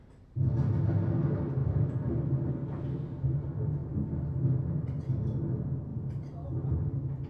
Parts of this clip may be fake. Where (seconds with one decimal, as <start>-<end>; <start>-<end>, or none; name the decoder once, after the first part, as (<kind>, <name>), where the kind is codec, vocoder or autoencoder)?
1.6-2.5 (vocoder, BigVGAN v2); 5.9-6.7